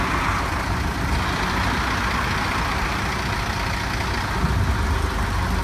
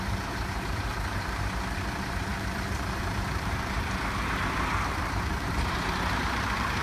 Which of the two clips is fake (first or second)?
second